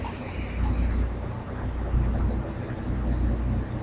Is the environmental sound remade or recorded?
recorded